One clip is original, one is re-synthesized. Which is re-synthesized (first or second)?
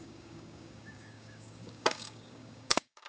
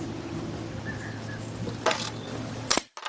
first